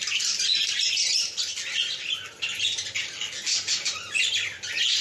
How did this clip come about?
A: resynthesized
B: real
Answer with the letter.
B